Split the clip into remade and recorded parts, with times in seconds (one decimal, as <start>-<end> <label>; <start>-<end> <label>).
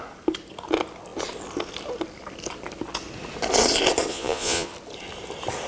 0.0-4.1 recorded; 4.1-4.7 remade; 4.7-5.7 recorded